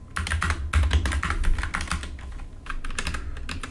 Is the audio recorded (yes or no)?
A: yes